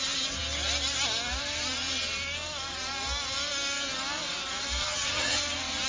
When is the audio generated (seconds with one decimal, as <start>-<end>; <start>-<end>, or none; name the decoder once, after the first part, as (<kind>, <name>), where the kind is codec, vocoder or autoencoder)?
4.8-5.4 (vocoder, HiFi-GAN)